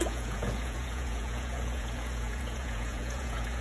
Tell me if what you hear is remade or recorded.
remade